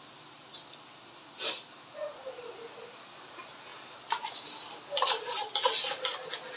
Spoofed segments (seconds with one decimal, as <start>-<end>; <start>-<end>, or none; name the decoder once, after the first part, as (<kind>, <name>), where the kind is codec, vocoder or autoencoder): 3.7-5.1 (vocoder, BigVGAN v2)